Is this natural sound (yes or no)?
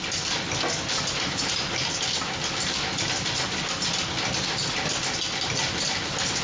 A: yes